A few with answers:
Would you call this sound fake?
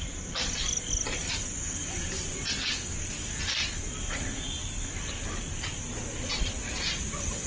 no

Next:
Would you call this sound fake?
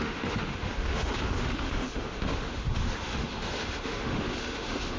yes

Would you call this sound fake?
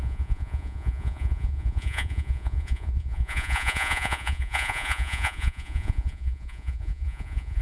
yes